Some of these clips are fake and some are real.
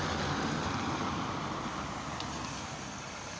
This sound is real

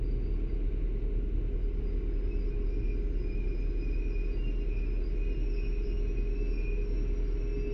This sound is real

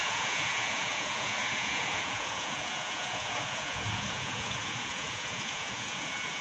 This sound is fake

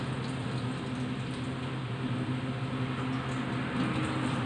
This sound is real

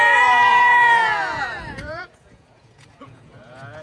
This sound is fake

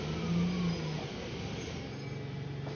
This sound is real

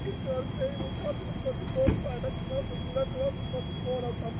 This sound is real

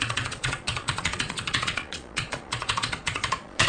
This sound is fake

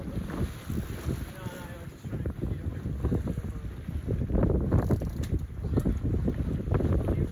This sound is real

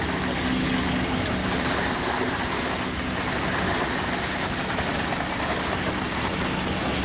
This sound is real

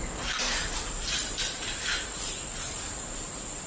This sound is real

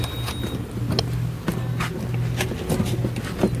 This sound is real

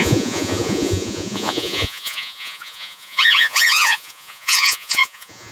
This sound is fake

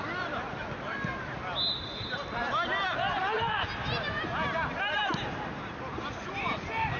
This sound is real